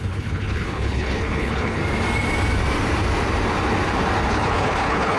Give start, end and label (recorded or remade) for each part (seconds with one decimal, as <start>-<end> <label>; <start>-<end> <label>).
0.0-1.8 remade; 1.8-4.3 recorded; 4.3-5.2 remade